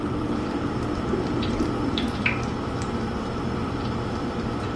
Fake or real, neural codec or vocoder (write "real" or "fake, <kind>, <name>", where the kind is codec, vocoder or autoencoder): fake, vocoder, BigVGAN v2